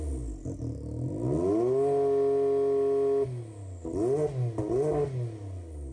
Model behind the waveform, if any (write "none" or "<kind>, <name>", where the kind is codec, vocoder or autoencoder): none